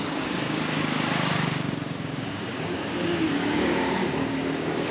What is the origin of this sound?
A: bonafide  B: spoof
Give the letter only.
B